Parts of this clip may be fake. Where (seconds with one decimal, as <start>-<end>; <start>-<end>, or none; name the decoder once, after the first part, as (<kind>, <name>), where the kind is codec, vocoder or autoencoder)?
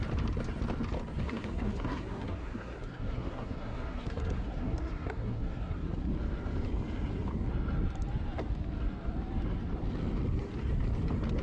1.2-6.1 (codec, SNAC)